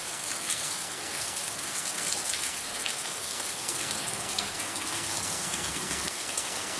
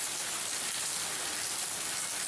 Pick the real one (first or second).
second